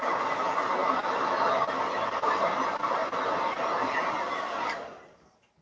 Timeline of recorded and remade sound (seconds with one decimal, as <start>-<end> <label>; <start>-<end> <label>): 0.0-5.6 recorded